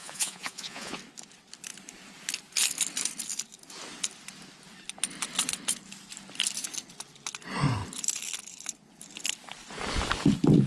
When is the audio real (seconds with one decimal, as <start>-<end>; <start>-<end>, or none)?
1.0-10.7